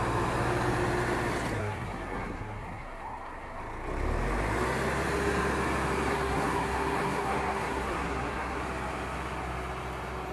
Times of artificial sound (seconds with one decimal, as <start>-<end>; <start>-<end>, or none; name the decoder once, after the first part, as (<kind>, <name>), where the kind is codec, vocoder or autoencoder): 1.6-3.6 (codec, SNAC); 6.1-8.6